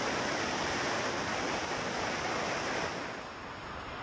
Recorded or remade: recorded